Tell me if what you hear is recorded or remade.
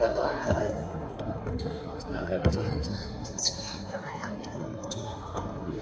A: remade